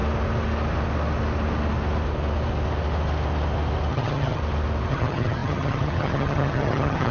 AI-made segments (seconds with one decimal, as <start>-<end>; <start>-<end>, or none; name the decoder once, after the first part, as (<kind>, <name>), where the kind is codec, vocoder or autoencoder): 3.9-4.4 (vocoder, HiFi-GAN); 4.9-7.1